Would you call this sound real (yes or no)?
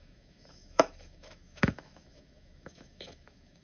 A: no